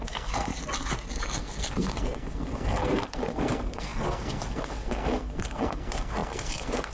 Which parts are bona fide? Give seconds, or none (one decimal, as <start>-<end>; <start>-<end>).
0.5-1.2